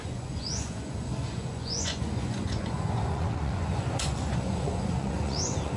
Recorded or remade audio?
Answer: remade